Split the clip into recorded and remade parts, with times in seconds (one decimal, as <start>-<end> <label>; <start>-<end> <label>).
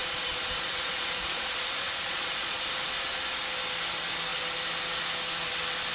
0.0-2.6 remade; 2.6-5.9 recorded